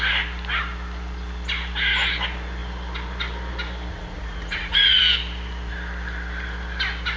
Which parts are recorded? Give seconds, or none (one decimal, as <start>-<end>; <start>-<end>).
0.0-3.9; 5.0-7.2